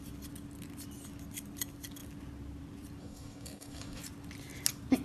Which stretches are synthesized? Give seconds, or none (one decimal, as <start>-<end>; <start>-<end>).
3.0-4.0

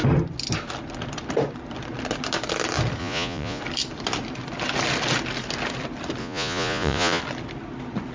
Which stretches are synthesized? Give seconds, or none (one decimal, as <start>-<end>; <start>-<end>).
3.0-3.6; 6.2-7.2

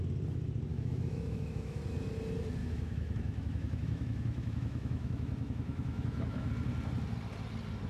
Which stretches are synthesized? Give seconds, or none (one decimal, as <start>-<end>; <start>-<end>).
0.7-1.8; 2.6-6.5

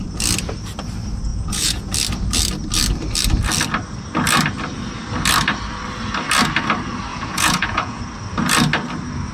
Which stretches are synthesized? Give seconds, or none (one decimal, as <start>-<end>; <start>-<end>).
1.3-1.9; 7.1-8.0

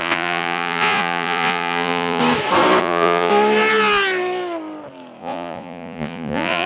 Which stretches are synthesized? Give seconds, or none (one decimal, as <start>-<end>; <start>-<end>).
0.0-2.2; 2.8-3.3; 5.2-6.7

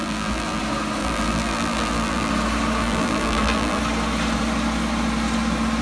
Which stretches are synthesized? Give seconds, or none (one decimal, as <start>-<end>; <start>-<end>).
0.0-0.6; 1.0-2.3; 2.8-3.8

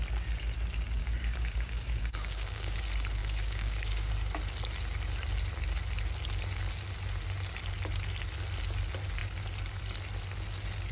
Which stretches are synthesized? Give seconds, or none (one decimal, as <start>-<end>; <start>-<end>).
1.0-2.8; 3.2-4.1